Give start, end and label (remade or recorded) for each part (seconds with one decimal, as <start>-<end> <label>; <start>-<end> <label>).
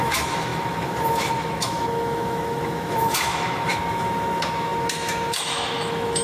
0.0-6.2 remade